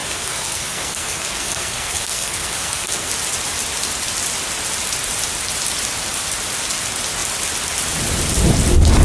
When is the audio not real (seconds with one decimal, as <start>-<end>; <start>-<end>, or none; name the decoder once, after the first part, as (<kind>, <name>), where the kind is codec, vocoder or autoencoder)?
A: 0.0-3.1 (codec, SNAC)